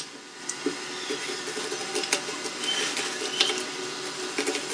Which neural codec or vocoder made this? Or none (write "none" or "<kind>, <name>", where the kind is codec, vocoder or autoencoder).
vocoder, BigVGAN v2